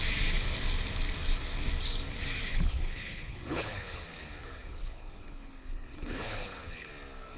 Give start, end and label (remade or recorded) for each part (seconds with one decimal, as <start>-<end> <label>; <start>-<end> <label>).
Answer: 0.0-2.5 recorded; 2.5-6.9 remade; 6.9-7.4 recorded